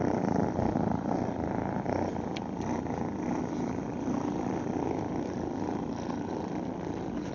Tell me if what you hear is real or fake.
real